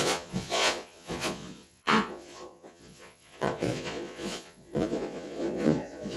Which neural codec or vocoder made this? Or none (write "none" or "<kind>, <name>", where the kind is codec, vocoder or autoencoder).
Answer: vocoder, Vocos